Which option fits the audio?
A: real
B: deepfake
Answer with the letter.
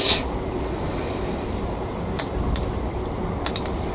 A